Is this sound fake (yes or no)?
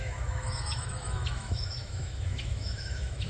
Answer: yes